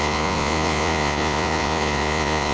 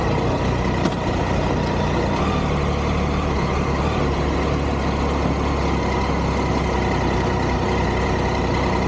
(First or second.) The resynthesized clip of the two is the first